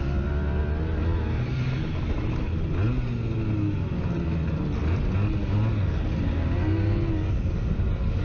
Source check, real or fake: real